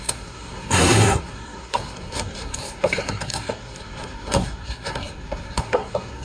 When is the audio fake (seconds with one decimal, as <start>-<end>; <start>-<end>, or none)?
0.0-6.2